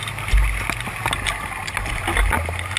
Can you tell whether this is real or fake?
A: real